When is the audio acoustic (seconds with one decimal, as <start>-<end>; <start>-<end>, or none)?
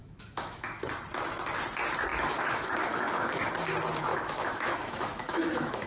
0.8-2.1; 3.5-4.1